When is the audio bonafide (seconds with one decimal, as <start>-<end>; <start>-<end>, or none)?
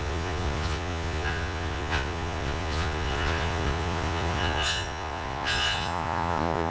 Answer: none